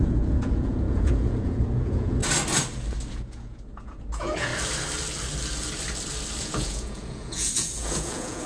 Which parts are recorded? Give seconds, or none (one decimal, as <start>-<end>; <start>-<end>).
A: 2.2-3.1; 4.5-6.4